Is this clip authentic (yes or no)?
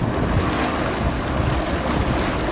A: yes